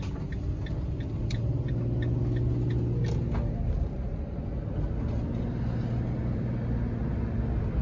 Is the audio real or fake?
real